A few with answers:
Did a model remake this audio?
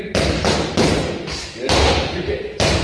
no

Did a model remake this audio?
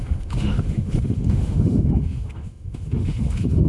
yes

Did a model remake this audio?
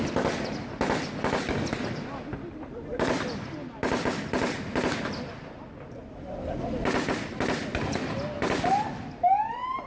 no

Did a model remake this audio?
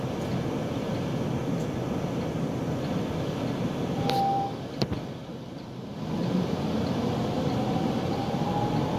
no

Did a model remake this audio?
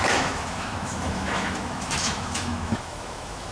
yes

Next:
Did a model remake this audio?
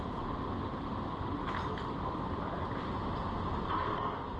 no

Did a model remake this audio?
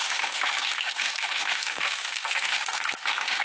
yes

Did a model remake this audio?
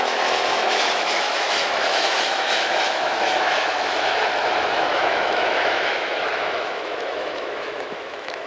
yes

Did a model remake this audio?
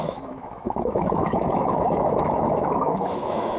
yes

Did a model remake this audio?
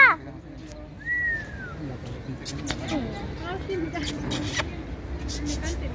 no